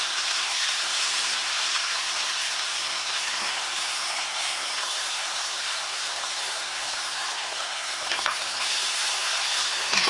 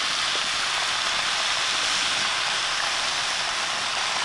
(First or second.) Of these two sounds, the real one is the second